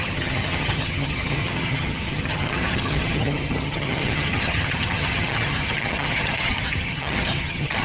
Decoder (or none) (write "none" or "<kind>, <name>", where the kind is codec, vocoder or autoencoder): vocoder, HiFi-GAN